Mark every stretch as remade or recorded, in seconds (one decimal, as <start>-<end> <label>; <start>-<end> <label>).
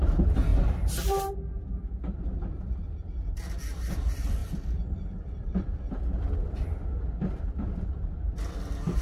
0.0-0.5 remade; 0.5-1.9 recorded; 1.9-2.3 remade; 2.3-3.7 recorded; 3.7-9.0 remade